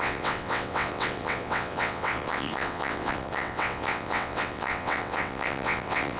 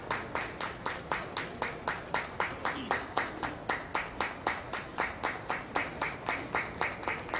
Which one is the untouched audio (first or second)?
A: second